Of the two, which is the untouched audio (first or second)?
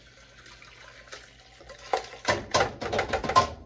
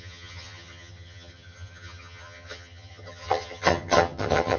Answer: first